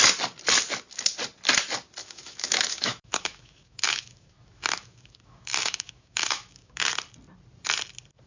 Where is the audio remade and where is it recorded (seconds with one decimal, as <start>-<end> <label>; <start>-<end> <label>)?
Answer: 0.0-2.0 recorded; 2.0-6.9 remade; 6.9-8.3 recorded